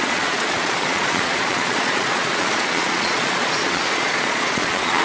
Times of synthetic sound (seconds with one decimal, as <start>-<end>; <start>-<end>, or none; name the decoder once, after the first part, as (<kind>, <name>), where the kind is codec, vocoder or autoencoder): 0.0-5.0 (vocoder, Vocos)